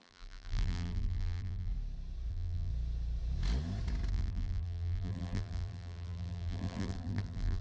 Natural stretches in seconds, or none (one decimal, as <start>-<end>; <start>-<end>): 1.7-2.3; 2.7-4.1